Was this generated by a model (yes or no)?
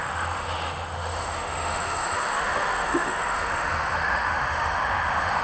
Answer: yes